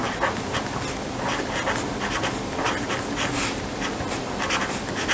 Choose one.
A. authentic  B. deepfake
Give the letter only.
A